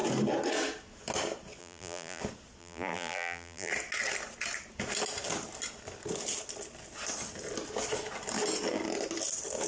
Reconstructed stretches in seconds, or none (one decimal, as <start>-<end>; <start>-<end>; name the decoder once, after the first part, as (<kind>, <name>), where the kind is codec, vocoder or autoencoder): 1.6-2.2 (vocoder, BigVGAN v2); 2.6-3.7